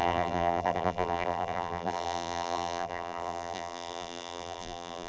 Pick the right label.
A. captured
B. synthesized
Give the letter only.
B